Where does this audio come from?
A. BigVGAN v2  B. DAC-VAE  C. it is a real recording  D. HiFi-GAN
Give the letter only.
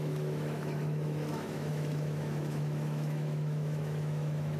B